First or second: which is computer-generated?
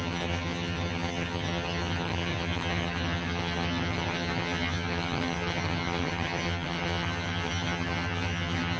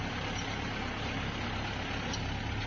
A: first